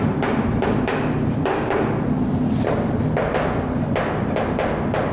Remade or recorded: recorded